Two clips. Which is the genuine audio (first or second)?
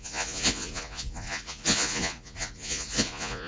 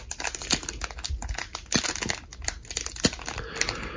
second